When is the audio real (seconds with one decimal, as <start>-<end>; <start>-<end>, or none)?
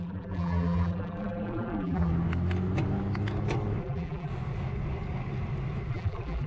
2.1-3.8; 4.3-5.9